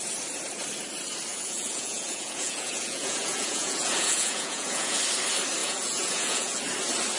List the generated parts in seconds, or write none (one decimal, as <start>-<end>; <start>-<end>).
1.3-5.0; 5.6-6.6